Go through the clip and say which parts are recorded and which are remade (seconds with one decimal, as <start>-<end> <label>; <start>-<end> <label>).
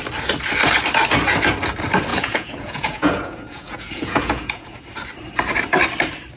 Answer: 0.0-2.1 recorded; 2.1-4.8 remade; 4.8-6.4 recorded